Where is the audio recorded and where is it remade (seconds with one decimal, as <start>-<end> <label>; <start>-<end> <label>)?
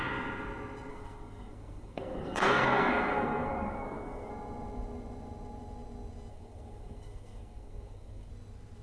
0.0-0.9 recorded; 0.9-4.3 remade; 4.3-6.3 recorded; 6.3-8.3 remade; 8.3-8.8 recorded